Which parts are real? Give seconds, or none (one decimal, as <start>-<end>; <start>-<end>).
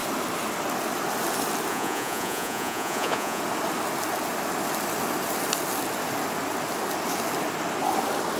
0.0-1.7; 3.4-8.4